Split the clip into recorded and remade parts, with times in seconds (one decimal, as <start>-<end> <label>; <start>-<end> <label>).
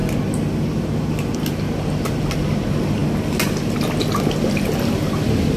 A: 0.0-5.6 recorded